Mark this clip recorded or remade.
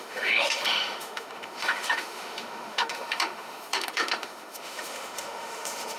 remade